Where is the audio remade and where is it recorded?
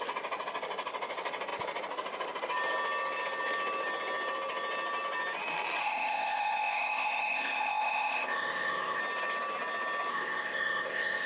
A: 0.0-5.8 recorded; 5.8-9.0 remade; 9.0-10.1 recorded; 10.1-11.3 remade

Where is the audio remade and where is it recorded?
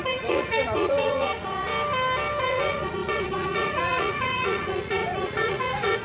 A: 0.0-1.7 remade; 1.7-2.4 recorded; 2.4-6.0 remade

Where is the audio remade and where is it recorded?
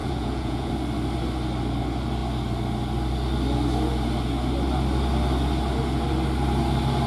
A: 0.0-0.7 remade; 0.7-7.1 recorded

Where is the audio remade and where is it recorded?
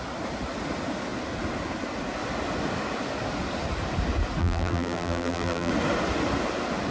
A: 0.0-4.4 recorded; 4.4-5.7 remade; 5.7-6.9 recorded